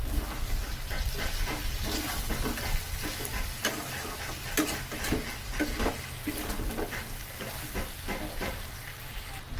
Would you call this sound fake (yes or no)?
no